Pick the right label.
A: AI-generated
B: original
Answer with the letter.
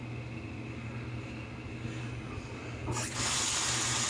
B